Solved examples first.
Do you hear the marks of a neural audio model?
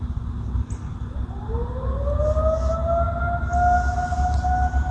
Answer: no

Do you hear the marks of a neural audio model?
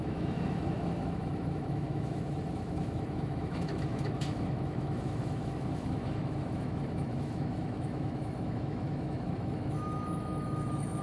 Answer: yes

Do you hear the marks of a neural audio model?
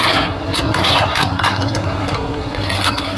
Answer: yes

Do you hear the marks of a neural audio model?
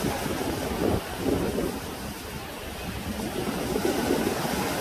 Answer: no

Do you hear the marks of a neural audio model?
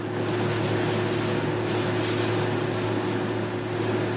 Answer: no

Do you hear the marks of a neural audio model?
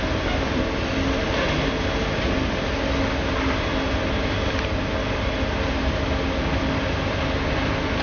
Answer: no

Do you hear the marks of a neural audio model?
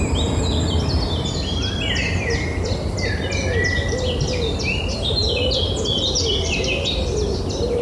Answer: no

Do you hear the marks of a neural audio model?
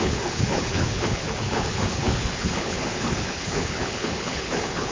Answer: yes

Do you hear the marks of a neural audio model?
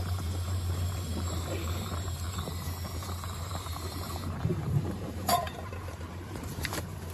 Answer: yes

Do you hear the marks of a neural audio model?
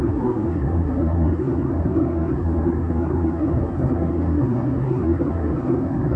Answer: yes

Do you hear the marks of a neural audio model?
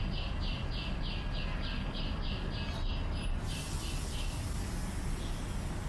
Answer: no